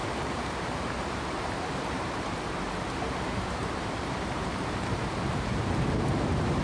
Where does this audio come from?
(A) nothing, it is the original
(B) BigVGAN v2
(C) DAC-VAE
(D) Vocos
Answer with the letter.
B